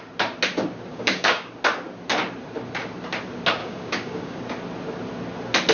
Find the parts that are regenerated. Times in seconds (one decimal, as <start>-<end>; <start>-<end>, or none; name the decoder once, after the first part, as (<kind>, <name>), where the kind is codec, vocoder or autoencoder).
0.9-1.5 (codec, DAC); 3.6-4.4